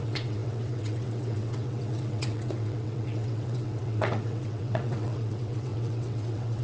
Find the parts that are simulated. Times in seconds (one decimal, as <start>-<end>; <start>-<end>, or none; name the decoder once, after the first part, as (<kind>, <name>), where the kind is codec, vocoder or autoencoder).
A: 0.0-6.6 (vocoder, WaveNeXt)